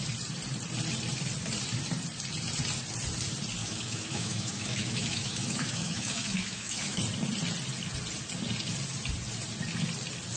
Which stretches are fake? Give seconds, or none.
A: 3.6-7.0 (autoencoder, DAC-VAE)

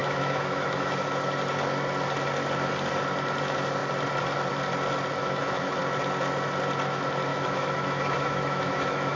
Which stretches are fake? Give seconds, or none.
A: 0.0-0.9 (autoencoder, DAC-VAE); 5.2-5.8; 7.3-9.2

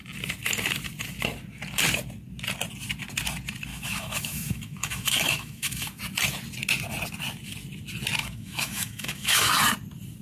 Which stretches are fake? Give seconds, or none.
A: 3.7-6.0 (autoencoder, DAC-VAE); 8.2-9.5

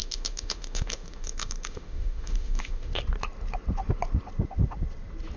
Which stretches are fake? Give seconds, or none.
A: 0.0-2.9 (autoencoder, DAC-VAE)